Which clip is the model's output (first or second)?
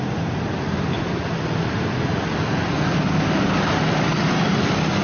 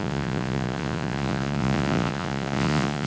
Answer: second